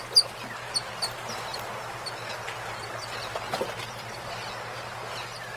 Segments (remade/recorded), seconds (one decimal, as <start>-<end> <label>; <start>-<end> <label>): 0.0-5.6 recorded